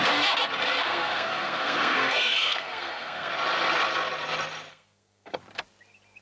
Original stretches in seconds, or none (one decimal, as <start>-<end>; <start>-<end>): 0.0-0.8; 3.3-4.7; 5.4-6.2